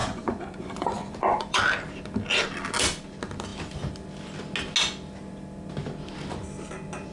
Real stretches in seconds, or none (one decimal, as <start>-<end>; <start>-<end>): 1.6-7.1